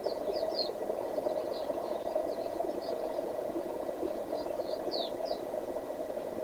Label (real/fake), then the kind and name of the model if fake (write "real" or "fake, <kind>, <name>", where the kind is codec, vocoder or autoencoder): fake, vocoder, Vocos